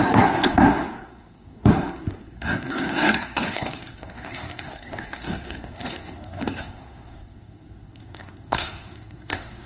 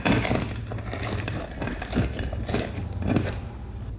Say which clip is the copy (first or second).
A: first